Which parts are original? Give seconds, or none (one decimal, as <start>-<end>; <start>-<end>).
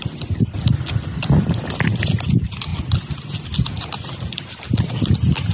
0.0-5.5